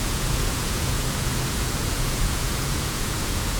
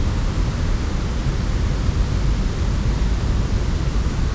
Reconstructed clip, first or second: first